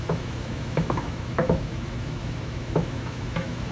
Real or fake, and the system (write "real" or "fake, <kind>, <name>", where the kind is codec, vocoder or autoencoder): fake, autoencoder, DAC-VAE